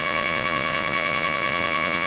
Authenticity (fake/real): fake